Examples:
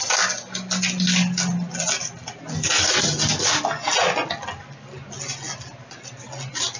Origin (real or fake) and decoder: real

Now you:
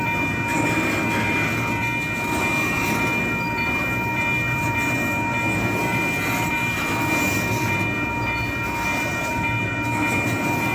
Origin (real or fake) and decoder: real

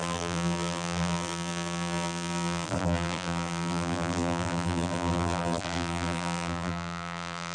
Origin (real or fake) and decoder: fake, vocoder, BigVGAN v2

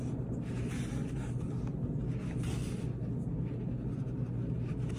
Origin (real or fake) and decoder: real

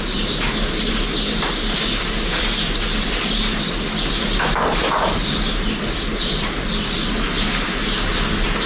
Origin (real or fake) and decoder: fake, vocoder, BigVGAN v2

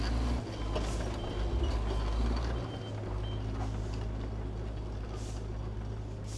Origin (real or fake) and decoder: real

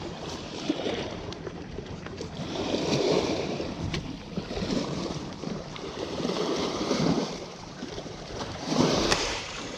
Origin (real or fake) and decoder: fake, vocoder, BigVGAN v2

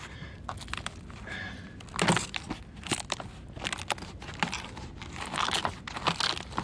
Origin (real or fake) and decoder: real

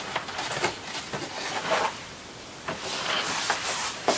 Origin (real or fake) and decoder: real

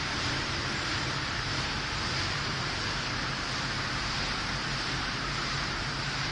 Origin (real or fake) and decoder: fake, vocoder, BigVGAN v2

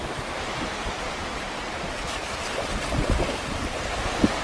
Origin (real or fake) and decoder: real